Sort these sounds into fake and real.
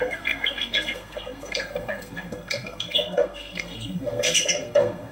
fake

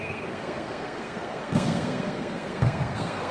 fake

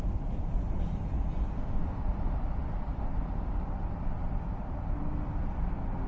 real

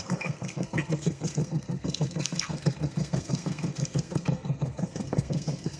fake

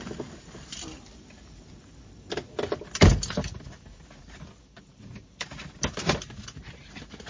real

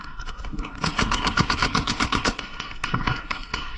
fake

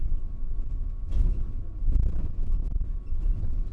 real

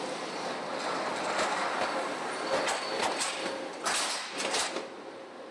real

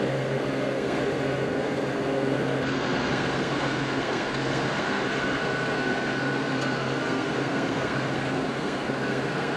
fake